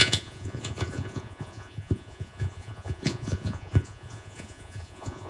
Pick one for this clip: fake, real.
fake